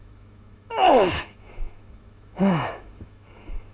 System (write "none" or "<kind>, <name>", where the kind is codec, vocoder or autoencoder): autoencoder, DAC-VAE